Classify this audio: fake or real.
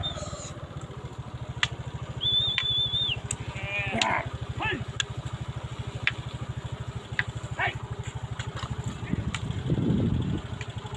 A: real